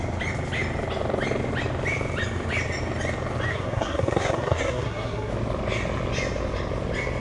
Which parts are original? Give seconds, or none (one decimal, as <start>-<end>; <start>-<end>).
0.0-3.5; 5.3-7.2